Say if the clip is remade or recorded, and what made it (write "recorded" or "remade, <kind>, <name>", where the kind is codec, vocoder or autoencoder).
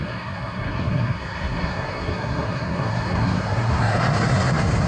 remade, codec, SNAC